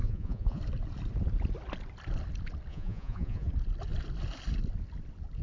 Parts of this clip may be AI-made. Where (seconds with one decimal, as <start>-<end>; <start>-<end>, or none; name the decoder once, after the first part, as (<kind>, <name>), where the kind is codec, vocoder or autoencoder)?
0.0-0.6 (vocoder, Vocos); 2.7-3.5

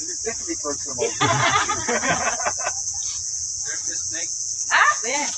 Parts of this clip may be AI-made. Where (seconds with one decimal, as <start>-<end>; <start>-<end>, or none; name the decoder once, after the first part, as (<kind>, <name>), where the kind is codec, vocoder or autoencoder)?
2.0-5.4 (vocoder, Vocos)

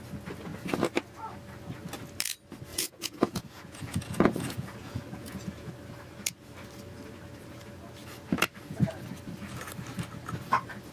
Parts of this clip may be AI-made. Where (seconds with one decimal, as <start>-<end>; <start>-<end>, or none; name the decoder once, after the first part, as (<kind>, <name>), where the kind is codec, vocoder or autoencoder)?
2.7-5.7 (vocoder, Vocos)

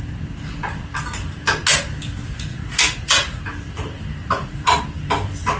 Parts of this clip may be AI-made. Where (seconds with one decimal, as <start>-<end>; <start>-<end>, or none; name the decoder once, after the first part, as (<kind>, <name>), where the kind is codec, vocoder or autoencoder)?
2.5-3.4 (vocoder, Vocos); 4.2-4.8